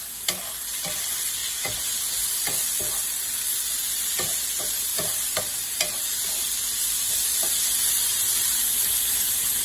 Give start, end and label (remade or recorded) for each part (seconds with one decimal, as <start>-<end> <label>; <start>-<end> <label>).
0.0-4.9 recorded; 4.9-5.4 remade; 5.4-8.4 recorded; 8.4-9.6 remade